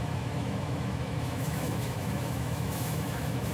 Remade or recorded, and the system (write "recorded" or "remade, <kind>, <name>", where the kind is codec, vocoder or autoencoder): remade, autoencoder, DAC-VAE